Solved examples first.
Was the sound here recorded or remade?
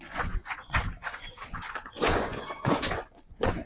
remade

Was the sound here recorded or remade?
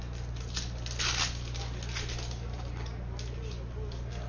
recorded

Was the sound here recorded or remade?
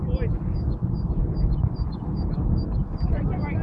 recorded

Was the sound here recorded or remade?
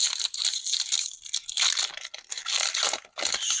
recorded